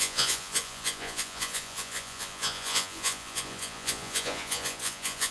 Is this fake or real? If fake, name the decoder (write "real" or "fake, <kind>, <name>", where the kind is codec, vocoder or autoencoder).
fake, vocoder, Vocos